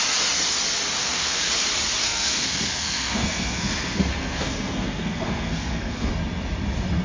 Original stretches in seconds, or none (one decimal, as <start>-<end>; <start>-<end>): 0.0-1.0; 1.5-2.0; 6.1-7.0